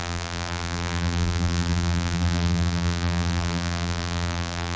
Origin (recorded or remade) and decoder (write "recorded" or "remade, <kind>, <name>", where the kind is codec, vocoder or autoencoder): remade, vocoder, BigVGAN v2